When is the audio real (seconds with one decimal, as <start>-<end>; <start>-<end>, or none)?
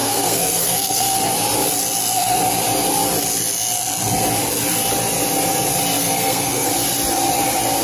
1.2-6.0; 6.7-7.8